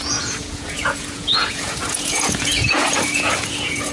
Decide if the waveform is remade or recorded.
remade